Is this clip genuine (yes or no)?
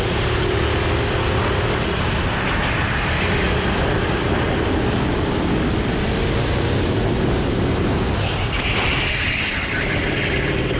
yes